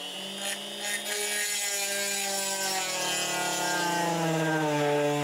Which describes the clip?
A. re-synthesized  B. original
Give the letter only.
B